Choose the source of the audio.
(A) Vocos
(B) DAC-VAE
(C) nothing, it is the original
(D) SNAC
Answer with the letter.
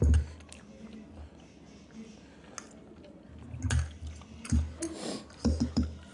C